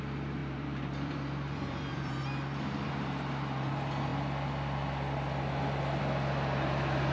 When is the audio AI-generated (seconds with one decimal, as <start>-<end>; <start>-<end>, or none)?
0.4-2.2